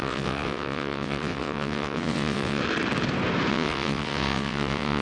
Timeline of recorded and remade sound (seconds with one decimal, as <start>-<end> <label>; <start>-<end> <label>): 0.0-2.6 remade; 2.6-3.5 recorded; 3.5-5.0 remade